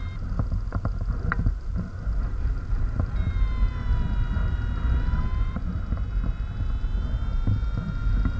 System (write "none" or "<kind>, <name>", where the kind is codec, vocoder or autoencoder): none